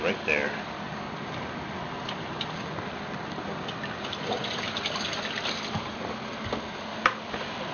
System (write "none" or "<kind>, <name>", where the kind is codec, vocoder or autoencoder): none